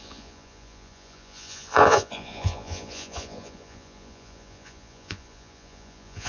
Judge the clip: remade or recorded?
remade